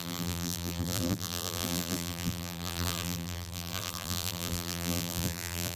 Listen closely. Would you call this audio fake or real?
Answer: fake